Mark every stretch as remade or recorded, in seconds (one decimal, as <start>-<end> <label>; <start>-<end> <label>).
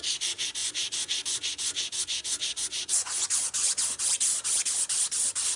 0.0-0.6 recorded; 0.6-4.0 remade; 4.0-5.6 recorded